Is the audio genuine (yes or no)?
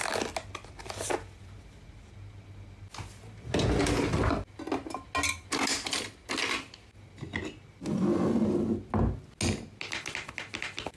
yes